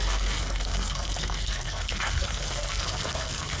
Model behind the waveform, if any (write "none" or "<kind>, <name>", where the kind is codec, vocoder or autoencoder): codec, SNAC